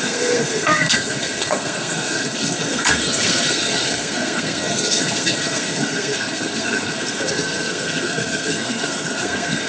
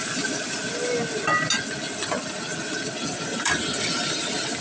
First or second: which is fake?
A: first